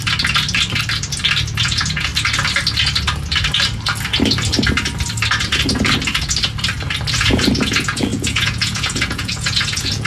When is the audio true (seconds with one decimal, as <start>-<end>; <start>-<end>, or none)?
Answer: 0.0-1.6; 2.1-7.1